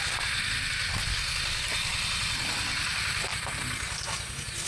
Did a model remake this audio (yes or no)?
no